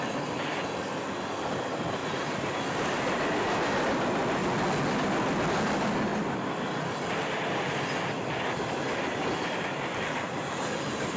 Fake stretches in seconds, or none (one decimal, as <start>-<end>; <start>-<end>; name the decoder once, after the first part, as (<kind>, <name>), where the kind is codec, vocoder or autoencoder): 0.0-2.0 (vocoder, BigVGAN v2); 2.7-4.4; 5.0-6.1; 6.8-11.2